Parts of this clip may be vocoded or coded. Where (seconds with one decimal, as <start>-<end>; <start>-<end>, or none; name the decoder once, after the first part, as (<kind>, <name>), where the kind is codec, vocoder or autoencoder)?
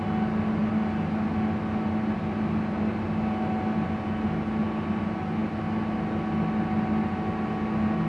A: none